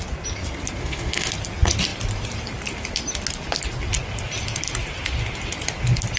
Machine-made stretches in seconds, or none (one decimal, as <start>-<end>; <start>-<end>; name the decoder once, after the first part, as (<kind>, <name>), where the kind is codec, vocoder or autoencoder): 0.8-1.3 (autoencoder, DAC-VAE)